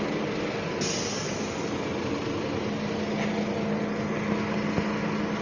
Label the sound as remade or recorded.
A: recorded